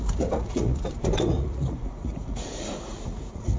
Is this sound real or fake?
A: fake